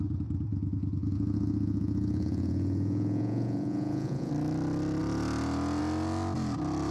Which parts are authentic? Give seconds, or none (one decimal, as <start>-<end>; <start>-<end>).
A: 0.0-0.5; 4.3-6.9